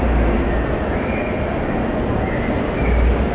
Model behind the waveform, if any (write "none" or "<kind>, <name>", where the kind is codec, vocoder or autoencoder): none